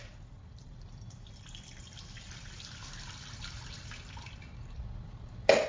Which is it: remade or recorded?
recorded